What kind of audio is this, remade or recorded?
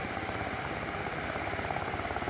remade